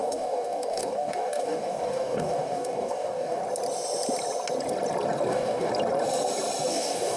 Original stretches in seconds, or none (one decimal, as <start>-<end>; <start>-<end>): 3.4-5.3; 5.7-6.7